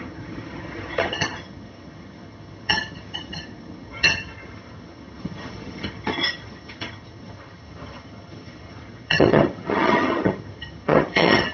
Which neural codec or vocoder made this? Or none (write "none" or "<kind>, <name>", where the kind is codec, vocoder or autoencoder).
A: vocoder, HiFi-GAN